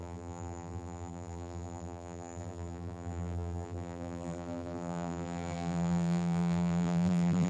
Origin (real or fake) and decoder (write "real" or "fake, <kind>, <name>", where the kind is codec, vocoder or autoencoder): fake, vocoder, BigVGAN v2